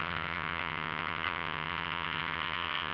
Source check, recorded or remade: remade